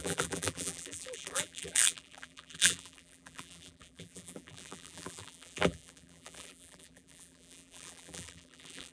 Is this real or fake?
fake